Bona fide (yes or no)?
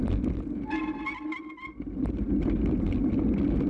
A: yes